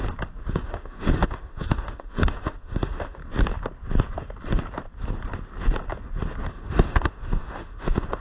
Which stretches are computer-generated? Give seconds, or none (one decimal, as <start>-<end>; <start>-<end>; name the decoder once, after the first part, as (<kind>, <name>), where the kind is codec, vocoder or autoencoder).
0.5-3.2 (autoencoder, DAC-VAE); 6.5-8.2